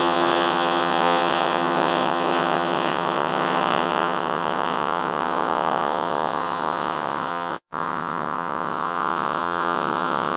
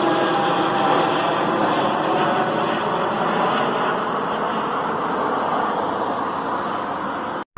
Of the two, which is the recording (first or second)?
second